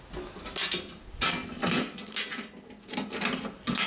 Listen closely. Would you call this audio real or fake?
real